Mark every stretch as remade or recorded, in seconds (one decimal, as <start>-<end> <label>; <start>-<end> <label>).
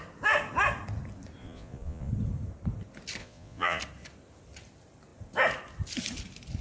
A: 0.0-1.4 recorded; 1.4-2.1 remade; 2.1-3.2 recorded; 3.2-3.8 remade; 3.8-6.6 recorded